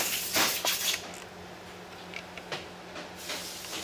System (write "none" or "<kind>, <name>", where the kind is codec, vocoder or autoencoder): none